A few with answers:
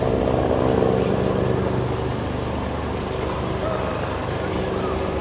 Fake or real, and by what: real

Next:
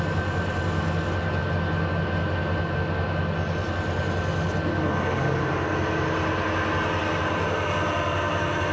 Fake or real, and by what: real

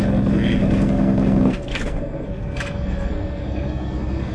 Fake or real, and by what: fake, codec, SNAC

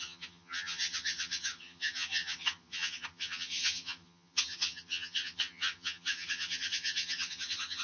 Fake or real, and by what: fake, vocoder, HiFi-GAN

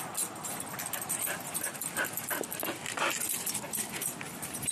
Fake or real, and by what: real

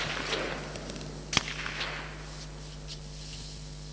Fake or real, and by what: real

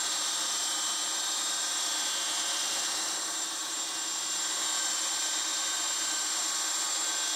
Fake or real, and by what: real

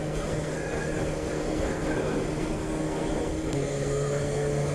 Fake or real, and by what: fake, codec, SNAC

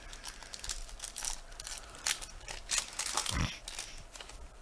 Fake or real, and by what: real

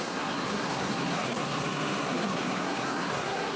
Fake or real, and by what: fake, codec, SNAC